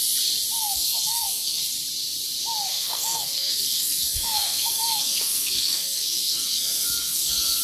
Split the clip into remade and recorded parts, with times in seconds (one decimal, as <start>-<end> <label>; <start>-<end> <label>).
0.0-0.6 recorded; 0.6-1.6 remade; 1.6-2.7 recorded; 2.7-7.6 remade